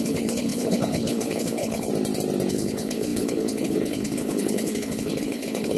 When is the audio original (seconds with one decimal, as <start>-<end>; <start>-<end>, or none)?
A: 1.9-2.5

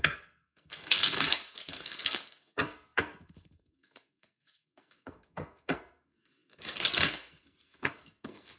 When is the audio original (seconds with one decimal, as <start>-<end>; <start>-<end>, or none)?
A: none

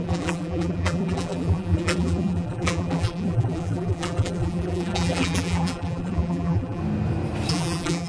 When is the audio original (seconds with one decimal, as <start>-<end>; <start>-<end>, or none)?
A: 6.8-7.5

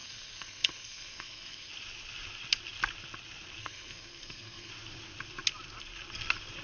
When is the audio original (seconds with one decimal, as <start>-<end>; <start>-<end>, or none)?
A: 1.7-3.6; 4.7-6.6

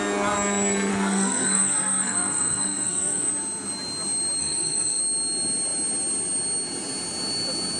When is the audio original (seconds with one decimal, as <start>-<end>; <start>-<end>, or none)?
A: 0.0-0.9; 3.3-4.4; 5.0-7.8

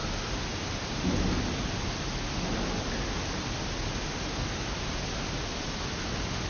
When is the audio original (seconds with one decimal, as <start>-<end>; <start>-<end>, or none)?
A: 0.0-6.5